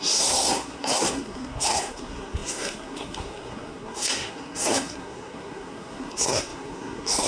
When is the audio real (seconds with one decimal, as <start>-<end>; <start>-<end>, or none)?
none